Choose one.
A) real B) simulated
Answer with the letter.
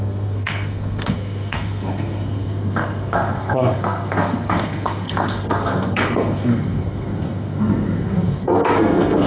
B